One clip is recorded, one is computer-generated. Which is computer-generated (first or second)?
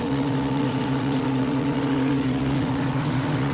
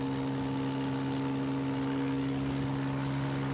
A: first